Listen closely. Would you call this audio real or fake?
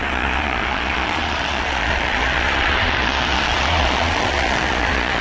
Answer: fake